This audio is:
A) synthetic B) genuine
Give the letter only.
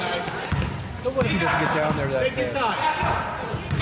B